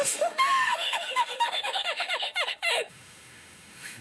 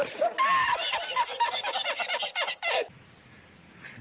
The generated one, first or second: first